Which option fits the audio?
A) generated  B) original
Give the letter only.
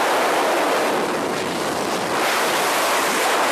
A